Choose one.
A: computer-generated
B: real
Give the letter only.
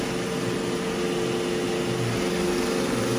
B